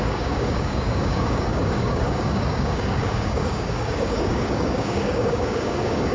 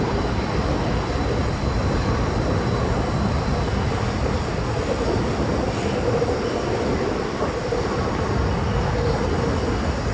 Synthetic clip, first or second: first